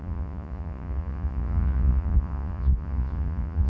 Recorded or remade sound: remade